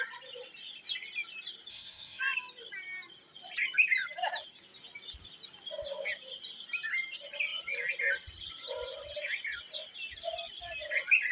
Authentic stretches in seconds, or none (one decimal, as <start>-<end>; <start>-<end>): 0.0-1.7; 2.2-11.3